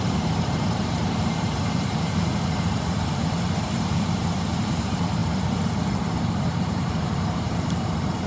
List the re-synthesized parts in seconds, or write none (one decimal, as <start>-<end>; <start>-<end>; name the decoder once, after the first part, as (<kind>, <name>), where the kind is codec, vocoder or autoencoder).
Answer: 0.0-5.2 (vocoder, BigVGAN v2); 6.3-8.3